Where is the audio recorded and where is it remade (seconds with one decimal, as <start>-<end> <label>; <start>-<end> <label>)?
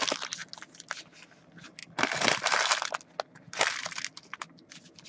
0.0-5.1 recorded